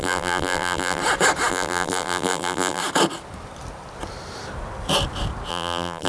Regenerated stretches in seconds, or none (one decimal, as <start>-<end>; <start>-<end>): 0.0-1.0; 1.5-2.8; 5.5-6.1